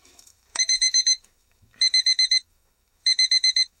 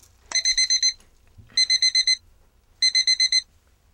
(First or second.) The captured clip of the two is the second